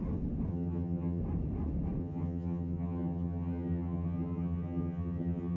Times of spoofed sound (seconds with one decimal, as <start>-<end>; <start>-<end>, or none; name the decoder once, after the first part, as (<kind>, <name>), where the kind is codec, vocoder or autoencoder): 0.5-1.2 (vocoder, HiFi-GAN); 2.0-5.6